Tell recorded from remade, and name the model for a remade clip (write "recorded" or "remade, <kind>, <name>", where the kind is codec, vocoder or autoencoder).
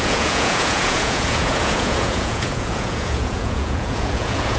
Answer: remade, vocoder, Vocos